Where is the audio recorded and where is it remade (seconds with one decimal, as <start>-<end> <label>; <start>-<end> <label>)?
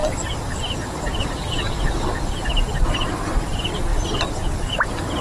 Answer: 0.0-3.1 recorded; 3.1-5.2 remade